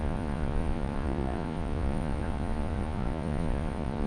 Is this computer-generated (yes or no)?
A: yes